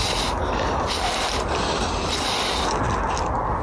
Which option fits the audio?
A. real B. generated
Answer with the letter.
A